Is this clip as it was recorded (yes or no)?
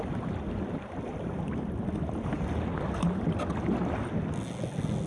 yes